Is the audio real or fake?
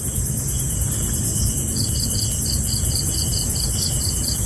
real